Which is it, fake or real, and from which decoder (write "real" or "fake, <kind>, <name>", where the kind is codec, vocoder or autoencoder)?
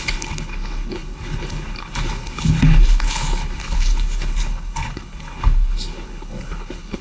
fake, codec, HILCodec